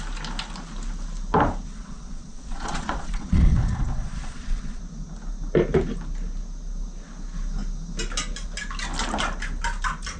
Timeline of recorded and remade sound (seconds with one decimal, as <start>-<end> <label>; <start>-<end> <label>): 0.0-1.7 recorded; 1.7-4.8 remade; 4.8-10.2 recorded